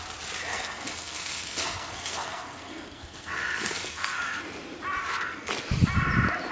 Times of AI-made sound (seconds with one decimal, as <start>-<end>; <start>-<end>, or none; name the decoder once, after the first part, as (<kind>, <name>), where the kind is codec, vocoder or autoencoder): 0.5-4.4 (codec, SNAC); 5.0-5.5